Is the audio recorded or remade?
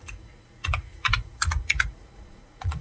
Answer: remade